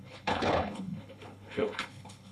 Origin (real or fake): fake